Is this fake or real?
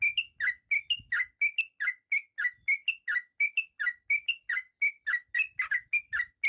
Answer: real